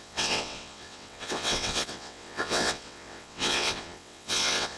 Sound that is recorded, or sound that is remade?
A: remade